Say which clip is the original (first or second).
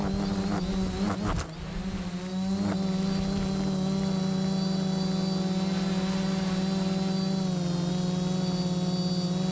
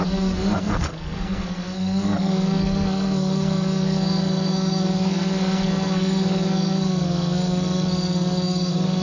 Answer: first